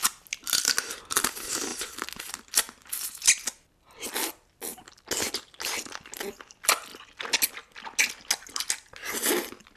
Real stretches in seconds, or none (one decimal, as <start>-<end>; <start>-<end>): 0.0-1.7; 2.3-9.8